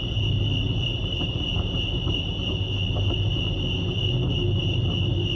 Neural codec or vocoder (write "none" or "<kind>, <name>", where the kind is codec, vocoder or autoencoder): none